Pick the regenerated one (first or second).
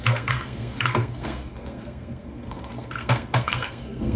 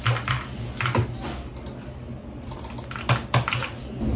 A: first